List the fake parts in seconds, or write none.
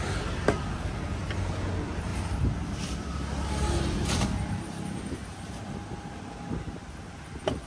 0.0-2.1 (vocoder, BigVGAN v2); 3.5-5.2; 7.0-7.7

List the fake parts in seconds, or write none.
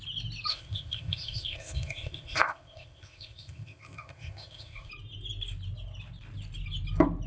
0.5-4.9 (codec, ZipCodec)